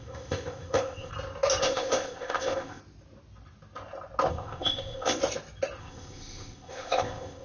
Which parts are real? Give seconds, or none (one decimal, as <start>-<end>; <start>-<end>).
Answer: 1.1-1.6; 2.8-4.3; 5.2-5.8